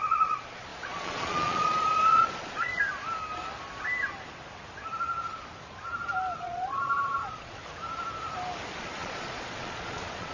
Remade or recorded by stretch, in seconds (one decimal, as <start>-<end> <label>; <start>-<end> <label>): 0.0-2.7 remade; 2.7-6.4 recorded; 6.4-7.6 remade; 7.6-8.8 recorded; 8.8-10.3 remade